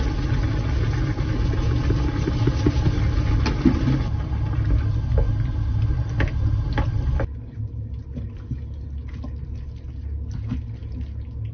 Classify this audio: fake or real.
real